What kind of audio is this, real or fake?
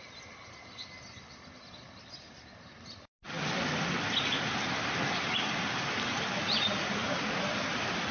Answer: real